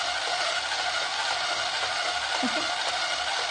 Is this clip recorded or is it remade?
recorded